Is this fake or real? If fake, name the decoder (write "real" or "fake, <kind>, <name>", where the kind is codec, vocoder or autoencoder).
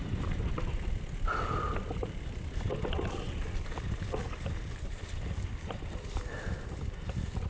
real